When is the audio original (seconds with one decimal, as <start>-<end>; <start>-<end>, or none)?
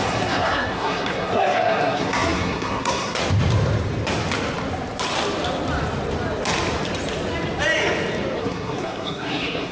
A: 3.2-8.4